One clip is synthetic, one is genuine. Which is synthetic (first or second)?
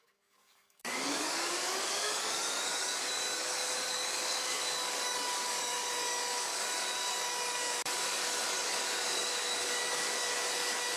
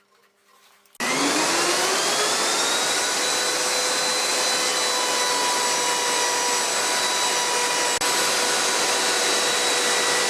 first